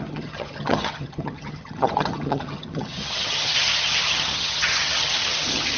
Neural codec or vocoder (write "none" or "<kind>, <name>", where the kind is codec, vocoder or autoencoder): vocoder, HiFi-GAN